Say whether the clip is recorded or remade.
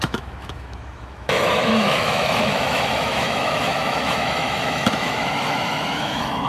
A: remade